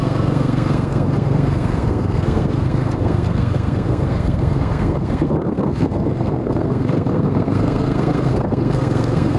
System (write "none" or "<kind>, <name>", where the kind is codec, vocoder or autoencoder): codec, SNAC